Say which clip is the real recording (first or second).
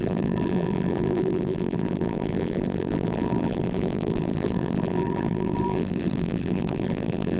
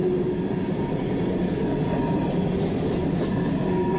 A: second